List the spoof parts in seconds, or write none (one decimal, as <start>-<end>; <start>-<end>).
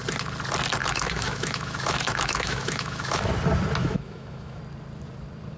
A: 0.8-3.3; 3.8-4.6